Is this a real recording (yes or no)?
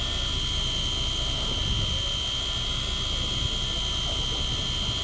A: yes